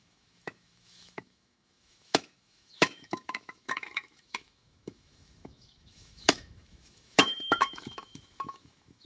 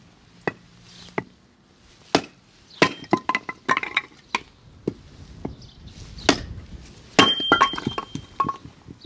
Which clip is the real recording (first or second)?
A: second